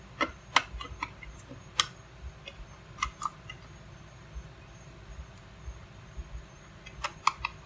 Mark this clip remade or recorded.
recorded